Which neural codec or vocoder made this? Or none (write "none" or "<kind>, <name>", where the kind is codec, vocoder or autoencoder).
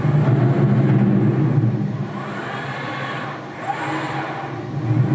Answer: none